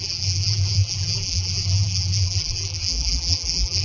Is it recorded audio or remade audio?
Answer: remade